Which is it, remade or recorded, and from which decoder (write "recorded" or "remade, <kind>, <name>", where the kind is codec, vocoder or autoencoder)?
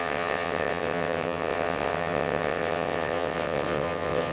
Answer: remade, vocoder, WaveNeXt